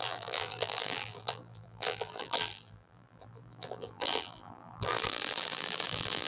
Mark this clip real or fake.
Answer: fake